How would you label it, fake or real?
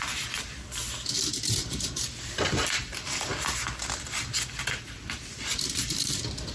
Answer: fake